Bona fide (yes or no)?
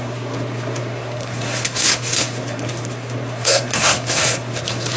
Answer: no